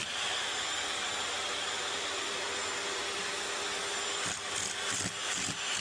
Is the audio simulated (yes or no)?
yes